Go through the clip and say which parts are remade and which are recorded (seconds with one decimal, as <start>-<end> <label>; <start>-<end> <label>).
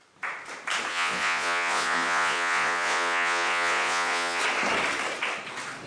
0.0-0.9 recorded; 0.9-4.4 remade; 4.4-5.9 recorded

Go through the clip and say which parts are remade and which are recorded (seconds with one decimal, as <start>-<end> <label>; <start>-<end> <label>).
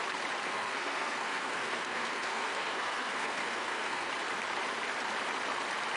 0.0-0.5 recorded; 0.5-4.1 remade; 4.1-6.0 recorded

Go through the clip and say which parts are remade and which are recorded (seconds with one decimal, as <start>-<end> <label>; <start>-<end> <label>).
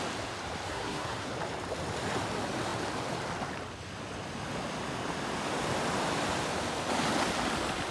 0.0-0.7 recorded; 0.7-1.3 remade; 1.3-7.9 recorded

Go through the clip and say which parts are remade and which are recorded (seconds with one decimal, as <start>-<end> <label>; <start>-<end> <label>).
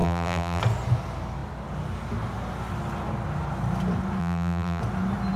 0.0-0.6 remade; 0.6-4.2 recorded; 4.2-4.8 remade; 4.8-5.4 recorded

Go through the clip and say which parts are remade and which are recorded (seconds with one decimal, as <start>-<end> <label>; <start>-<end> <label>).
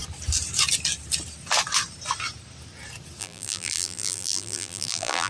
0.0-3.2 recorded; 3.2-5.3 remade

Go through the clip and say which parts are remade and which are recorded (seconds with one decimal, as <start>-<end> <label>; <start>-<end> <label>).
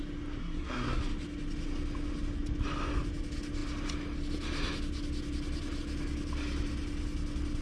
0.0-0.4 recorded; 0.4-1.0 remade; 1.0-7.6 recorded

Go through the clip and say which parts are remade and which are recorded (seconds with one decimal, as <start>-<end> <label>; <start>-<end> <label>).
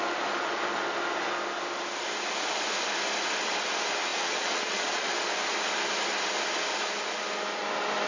0.0-4.1 recorded; 4.1-5.1 remade; 5.1-8.1 recorded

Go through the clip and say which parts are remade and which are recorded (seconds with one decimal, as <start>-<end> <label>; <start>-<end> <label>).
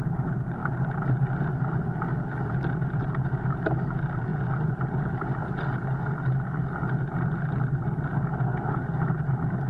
0.0-0.6 remade; 0.6-3.0 recorded; 3.0-4.3 remade; 4.3-5.0 recorded; 5.0-5.4 remade; 5.4-7.5 recorded; 7.5-8.1 remade; 8.1-9.0 recorded; 9.0-9.7 remade